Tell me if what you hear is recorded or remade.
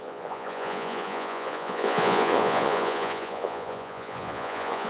remade